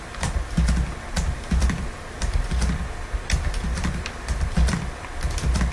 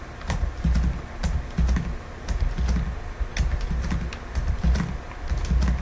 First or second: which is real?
second